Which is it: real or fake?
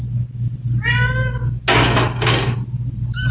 real